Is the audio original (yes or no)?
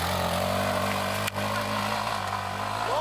yes